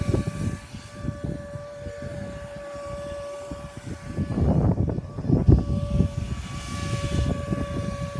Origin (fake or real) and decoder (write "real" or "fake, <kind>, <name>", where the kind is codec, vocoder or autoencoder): real